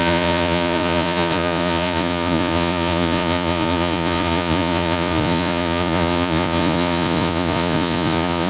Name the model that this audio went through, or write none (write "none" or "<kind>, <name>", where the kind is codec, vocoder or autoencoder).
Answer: vocoder, Vocos